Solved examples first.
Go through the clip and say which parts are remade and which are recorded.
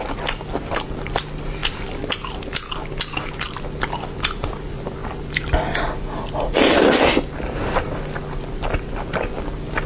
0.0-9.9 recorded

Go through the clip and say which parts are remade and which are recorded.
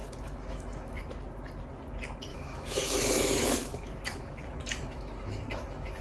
0.0-1.0 remade; 1.0-2.3 recorded; 2.3-6.0 remade